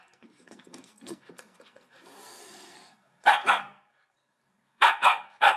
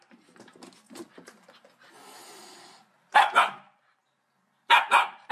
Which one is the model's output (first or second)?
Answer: first